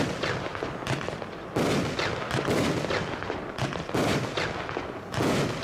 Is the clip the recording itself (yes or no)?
yes